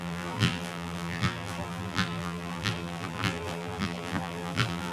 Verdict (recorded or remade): remade